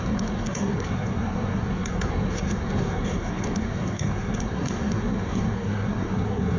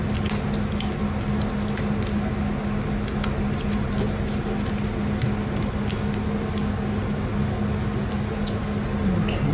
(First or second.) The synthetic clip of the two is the first